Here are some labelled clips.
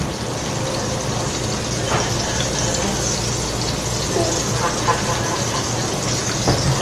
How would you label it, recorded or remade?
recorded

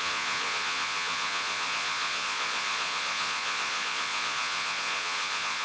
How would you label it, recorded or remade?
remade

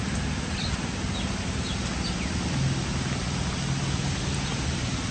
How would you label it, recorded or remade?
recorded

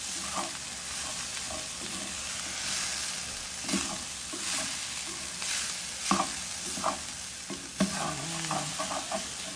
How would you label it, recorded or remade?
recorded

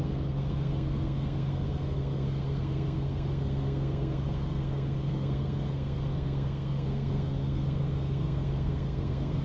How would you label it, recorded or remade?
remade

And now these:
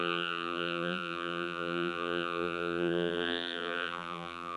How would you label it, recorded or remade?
remade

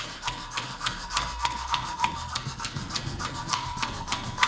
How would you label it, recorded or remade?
remade